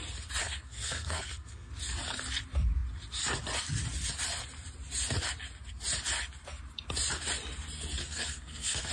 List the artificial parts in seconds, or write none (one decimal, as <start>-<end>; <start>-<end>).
0.4-1.7; 8.0-8.9